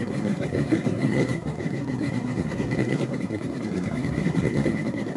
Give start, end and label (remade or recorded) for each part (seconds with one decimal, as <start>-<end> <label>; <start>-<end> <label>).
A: 0.0-5.2 remade